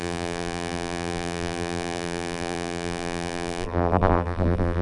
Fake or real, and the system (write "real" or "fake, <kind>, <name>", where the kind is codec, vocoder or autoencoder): fake, vocoder, BigVGAN v2